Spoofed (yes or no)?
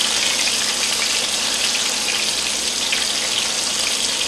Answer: no